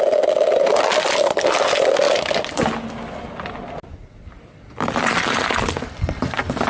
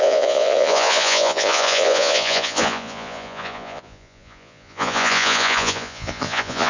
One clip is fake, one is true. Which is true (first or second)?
first